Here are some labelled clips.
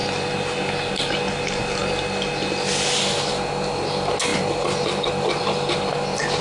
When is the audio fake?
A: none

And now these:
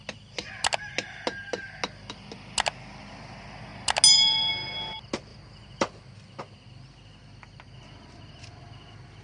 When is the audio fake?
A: 5.3-6.4 (vocoder, BigVGAN v2)

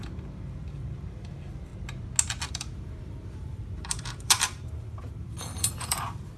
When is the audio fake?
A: 0.0-1.7 (vocoder, BigVGAN v2); 2.5-6.4

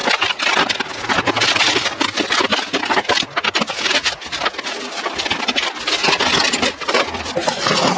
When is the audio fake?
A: none

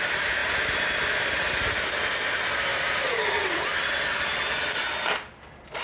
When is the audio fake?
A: 0.4-1.9 (vocoder, BigVGAN v2); 2.7-4.6

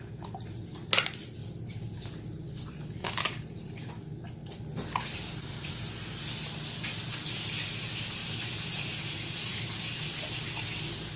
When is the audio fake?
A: 1.4-3.9 (vocoder, BigVGAN v2); 4.4-5.8; 8.2-9.9

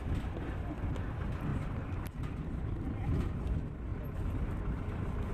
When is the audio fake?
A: 1.5-2.5 (vocoder, BigVGAN v2)

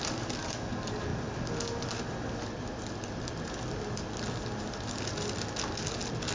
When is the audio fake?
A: none